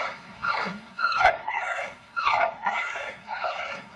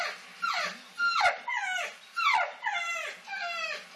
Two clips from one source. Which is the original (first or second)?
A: second